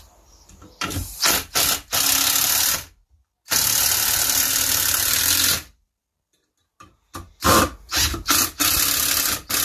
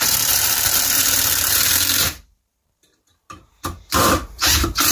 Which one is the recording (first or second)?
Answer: first